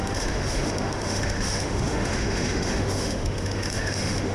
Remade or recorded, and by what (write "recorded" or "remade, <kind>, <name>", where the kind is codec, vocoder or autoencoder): remade, autoencoder, DAC-VAE